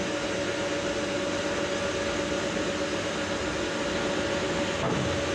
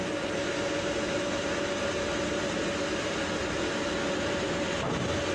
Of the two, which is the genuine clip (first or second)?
first